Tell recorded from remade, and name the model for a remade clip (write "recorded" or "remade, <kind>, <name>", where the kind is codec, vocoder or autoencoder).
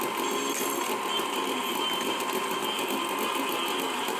recorded